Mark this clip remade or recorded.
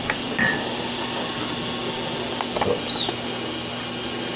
recorded